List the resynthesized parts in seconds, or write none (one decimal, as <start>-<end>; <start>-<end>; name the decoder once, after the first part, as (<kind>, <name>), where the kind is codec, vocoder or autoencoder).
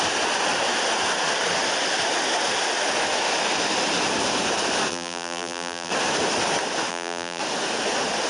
4.9-5.9 (vocoder, BigVGAN v2); 6.9-7.4